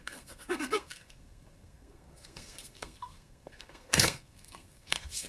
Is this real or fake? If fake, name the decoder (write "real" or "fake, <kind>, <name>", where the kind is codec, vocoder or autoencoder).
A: fake, codec, SNAC